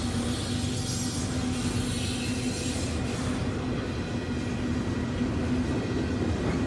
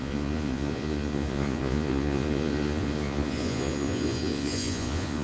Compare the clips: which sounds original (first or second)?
first